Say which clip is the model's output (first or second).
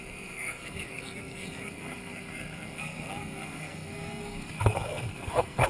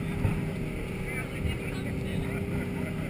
first